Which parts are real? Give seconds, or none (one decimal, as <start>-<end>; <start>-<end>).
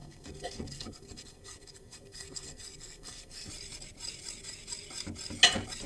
3.5-5.9